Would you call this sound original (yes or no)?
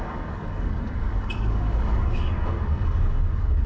no